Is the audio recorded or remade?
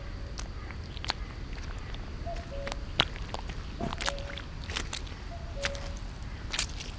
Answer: recorded